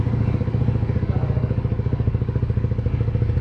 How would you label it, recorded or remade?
remade